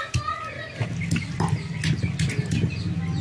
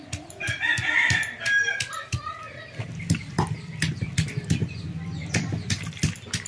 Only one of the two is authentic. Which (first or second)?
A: first